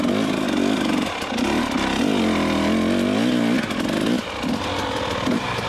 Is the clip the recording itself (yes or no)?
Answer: yes